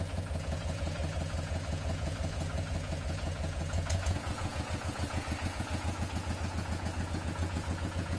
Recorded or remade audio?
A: remade